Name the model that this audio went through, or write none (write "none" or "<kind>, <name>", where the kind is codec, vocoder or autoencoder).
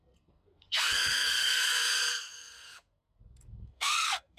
codec, SNAC